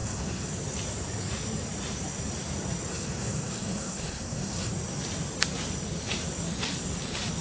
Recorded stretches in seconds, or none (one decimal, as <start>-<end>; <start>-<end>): 0.5-2.9; 4.7-7.4